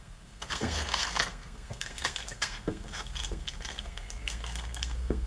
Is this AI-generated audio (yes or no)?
yes